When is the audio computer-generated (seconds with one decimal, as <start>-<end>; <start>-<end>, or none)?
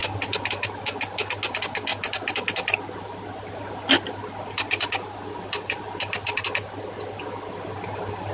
0.0-0.8; 1.9-6.4